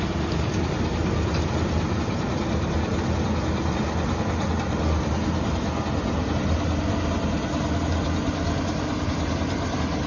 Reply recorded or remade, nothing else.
recorded